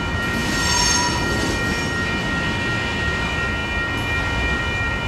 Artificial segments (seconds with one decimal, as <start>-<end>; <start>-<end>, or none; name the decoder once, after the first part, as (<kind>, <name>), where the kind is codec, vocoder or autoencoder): none